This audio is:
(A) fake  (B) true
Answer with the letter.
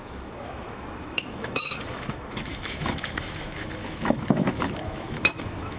A